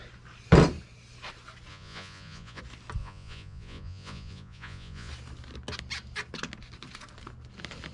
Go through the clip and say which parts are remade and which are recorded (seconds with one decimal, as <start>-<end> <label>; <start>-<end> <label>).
0.0-1.7 recorded; 1.7-2.6 remade; 2.6-3.0 recorded; 3.0-5.1 remade; 5.1-7.9 recorded